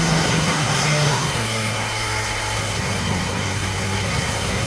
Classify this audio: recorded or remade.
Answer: remade